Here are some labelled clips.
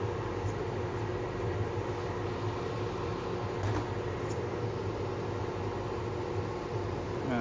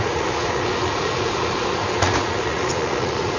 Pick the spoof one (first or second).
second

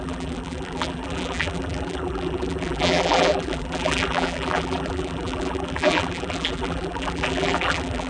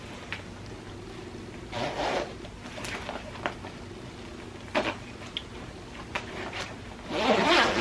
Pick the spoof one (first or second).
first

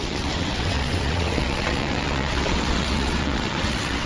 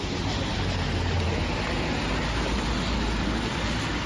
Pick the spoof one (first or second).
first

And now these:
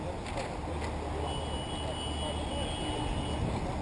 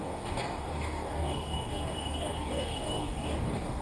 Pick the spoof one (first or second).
second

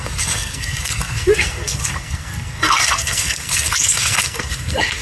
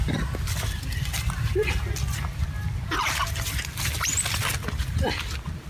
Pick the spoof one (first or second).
first